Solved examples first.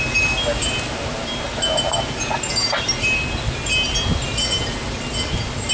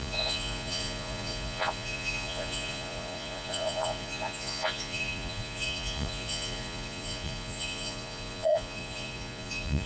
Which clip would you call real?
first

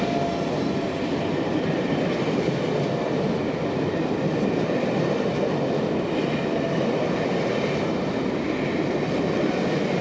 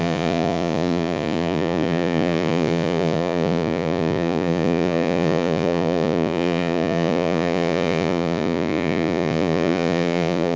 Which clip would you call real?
first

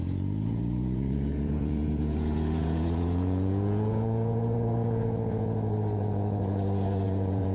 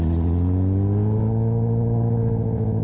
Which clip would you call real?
second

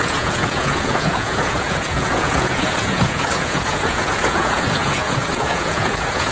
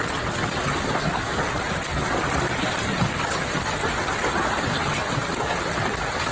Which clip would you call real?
second